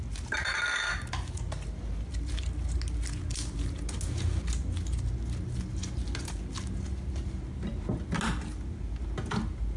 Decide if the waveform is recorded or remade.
recorded